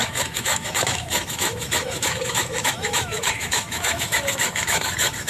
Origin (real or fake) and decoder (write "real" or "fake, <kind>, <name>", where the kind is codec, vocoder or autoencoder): fake, autoencoder, DAC-VAE